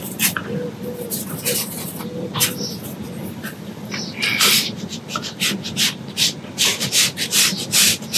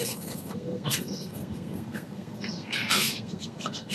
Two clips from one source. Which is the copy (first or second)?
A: second